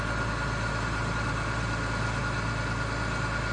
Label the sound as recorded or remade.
recorded